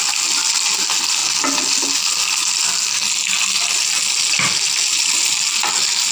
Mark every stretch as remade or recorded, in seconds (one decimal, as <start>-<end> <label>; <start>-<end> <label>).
0.0-6.1 recorded